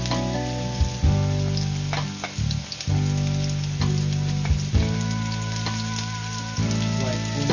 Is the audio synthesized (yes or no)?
no